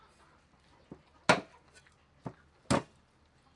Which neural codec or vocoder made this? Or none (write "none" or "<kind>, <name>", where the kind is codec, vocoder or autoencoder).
none